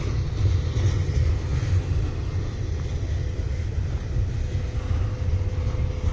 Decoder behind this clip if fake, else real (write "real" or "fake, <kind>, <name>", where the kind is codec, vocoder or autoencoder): real